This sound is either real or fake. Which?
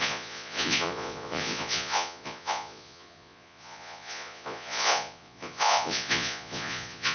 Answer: fake